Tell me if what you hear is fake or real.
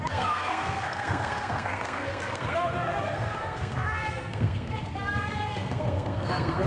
fake